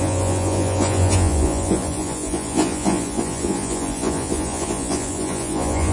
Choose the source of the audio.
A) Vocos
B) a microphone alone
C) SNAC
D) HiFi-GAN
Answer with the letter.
A